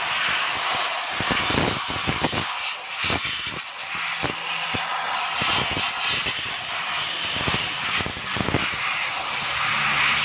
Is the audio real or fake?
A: real